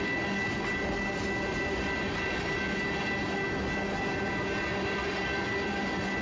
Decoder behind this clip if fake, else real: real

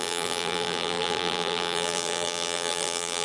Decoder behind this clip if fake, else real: fake, vocoder, BigVGAN v2